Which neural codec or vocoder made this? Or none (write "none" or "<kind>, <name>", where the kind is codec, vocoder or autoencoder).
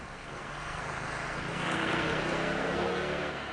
codec, SNAC